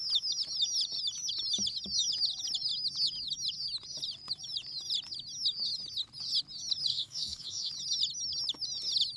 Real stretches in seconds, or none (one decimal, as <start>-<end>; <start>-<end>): 0.0-6.9; 7.7-9.2